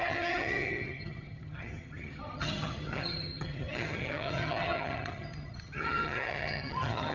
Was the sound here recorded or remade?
remade